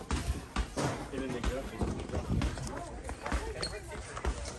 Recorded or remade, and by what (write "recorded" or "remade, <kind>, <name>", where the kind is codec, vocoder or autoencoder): recorded